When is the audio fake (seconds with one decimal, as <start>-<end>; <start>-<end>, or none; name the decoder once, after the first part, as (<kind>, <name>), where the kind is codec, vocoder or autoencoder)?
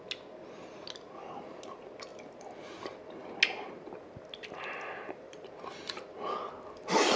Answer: none